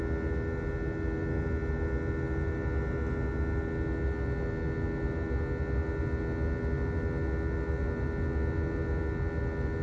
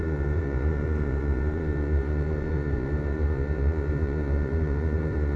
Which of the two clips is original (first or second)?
first